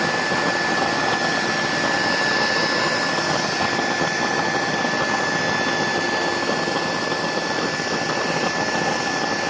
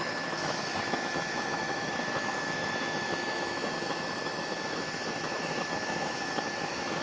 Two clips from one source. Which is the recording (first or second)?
first